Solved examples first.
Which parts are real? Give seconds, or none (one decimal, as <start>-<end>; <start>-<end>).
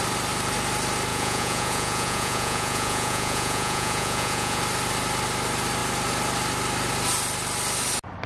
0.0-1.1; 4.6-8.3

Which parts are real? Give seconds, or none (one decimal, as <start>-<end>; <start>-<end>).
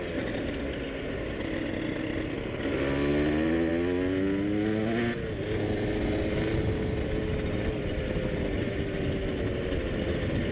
0.0-10.5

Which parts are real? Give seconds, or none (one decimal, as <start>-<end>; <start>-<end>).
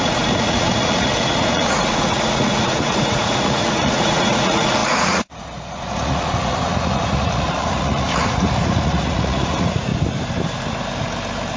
9.9-11.6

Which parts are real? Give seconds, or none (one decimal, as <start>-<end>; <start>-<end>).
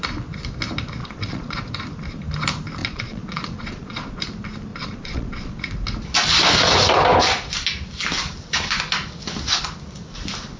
0.0-1.0; 1.7-2.8; 4.2-4.7; 5.6-10.6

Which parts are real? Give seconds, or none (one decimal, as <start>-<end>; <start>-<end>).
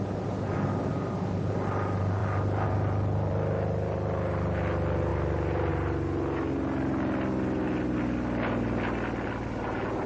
0.0-10.1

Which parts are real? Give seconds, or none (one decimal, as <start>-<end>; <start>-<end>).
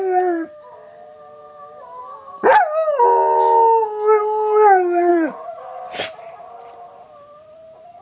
0.0-5.1; 5.8-8.0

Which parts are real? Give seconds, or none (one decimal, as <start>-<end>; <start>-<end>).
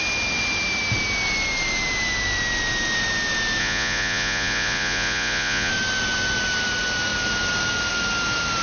0.0-3.6; 5.7-8.6